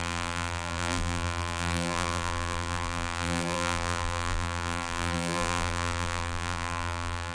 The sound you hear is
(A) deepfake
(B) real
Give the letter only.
A